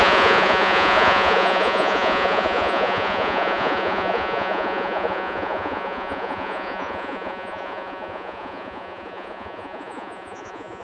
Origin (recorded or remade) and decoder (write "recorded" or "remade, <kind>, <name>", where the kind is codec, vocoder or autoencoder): remade, vocoder, Vocos